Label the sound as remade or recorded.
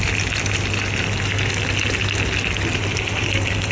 recorded